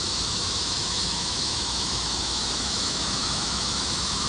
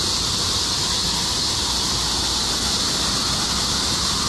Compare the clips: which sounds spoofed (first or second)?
first